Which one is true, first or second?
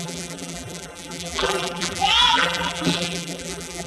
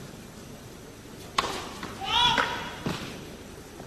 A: second